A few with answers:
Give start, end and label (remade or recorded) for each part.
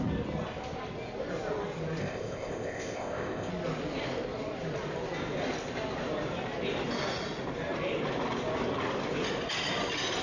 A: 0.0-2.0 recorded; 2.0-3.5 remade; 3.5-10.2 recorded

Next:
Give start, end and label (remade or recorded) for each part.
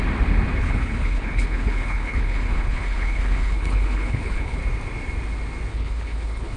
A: 0.0-0.6 recorded; 0.6-4.6 remade; 4.6-5.7 recorded; 5.7-6.6 remade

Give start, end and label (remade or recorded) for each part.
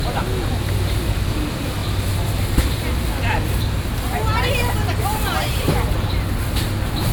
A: 0.0-1.8 recorded; 1.8-6.1 remade; 6.1-7.1 recorded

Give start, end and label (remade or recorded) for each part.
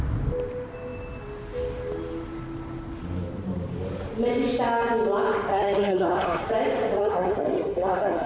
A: 0.0-5.5 recorded; 5.5-6.5 remade; 6.5-7.0 recorded; 7.0-8.3 remade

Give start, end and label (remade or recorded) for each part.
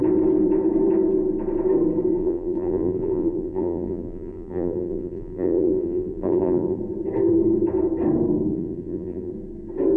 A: 0.0-2.2 recorded; 2.2-6.8 remade; 6.8-8.5 recorded; 8.5-9.3 remade; 9.3-10.0 recorded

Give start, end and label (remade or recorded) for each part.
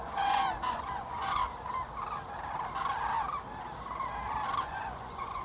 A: 0.0-1.4 remade; 1.4-4.6 recorded; 4.6-5.4 remade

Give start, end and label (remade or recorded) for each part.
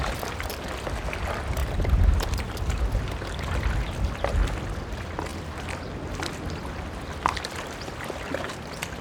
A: 0.0-1.6 recorded; 1.6-2.6 remade; 2.6-9.0 recorded